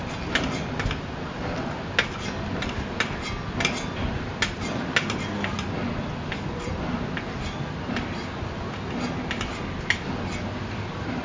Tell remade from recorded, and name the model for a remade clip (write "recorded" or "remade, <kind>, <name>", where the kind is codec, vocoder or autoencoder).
recorded